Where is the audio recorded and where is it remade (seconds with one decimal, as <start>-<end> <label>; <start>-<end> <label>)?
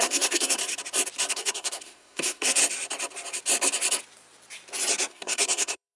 0.0-0.6 remade; 0.6-1.3 recorded; 1.3-2.6 remade; 2.6-5.1 recorded; 5.1-6.0 remade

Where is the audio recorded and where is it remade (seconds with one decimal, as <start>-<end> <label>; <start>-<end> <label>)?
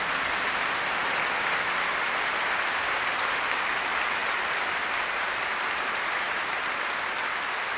0.0-7.8 recorded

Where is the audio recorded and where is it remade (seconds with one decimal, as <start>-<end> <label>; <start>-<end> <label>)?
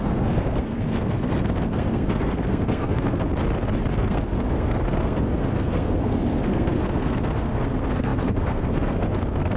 0.0-3.3 remade; 3.3-3.9 recorded; 3.9-9.6 remade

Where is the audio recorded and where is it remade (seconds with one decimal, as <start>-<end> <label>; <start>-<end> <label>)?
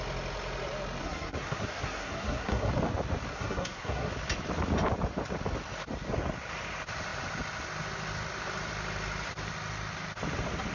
0.0-1.0 recorded; 1.0-2.7 remade; 2.7-3.3 recorded; 3.3-4.1 remade; 4.1-10.7 recorded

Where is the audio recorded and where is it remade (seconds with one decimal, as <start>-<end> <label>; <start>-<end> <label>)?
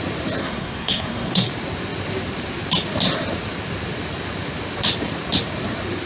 0.0-0.4 recorded; 0.4-1.5 remade; 1.5-6.1 recorded